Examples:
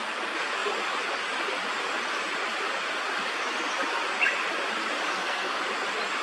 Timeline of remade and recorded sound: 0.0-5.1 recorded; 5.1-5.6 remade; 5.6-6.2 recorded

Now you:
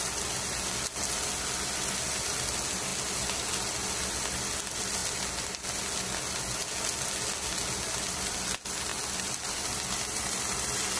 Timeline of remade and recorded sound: 0.0-11.0 recorded

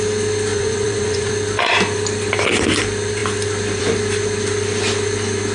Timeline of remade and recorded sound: 0.0-0.5 recorded; 0.5-1.3 remade; 1.3-5.5 recorded